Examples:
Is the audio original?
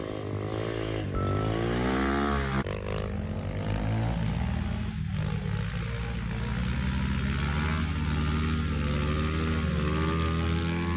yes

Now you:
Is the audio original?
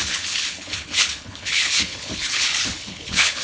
no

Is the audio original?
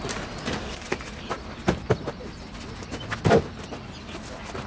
yes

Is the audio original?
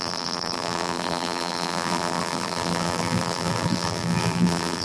no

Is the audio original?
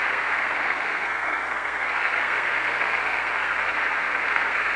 no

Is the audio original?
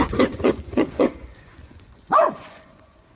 no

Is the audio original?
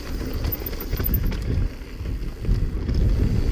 yes